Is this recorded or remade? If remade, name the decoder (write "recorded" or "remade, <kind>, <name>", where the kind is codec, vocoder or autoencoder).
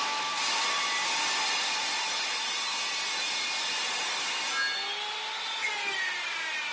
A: recorded